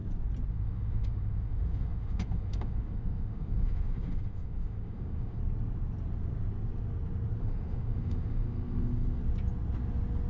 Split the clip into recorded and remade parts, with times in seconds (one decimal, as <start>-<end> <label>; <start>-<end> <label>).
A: 0.0-0.5 recorded; 0.5-5.4 remade; 5.4-7.4 recorded; 7.4-9.2 remade; 9.2-10.3 recorded